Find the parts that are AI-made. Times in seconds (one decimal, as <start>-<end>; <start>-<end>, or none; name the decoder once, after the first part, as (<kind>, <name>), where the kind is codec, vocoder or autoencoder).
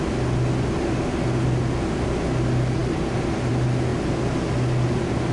none